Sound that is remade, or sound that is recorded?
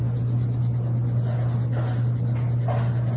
recorded